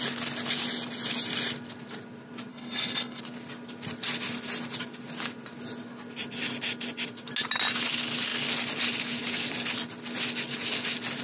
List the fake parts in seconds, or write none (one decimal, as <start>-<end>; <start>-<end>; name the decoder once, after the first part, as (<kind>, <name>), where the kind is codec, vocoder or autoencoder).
2.5-3.2 (codec, HILCodec)